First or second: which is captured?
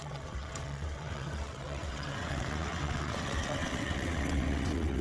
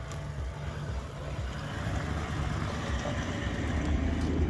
second